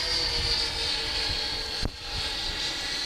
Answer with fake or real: real